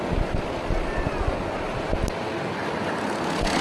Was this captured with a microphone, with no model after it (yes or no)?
yes